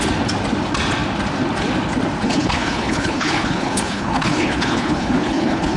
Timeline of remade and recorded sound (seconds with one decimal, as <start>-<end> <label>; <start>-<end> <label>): 0.0-2.2 recorded; 2.2-5.8 remade